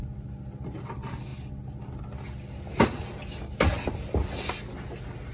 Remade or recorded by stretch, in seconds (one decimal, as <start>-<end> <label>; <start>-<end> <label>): 0.0-5.3 recorded